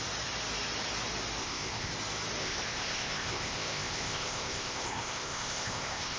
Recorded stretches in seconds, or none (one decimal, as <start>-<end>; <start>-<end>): 0.0-1.4; 1.9-2.4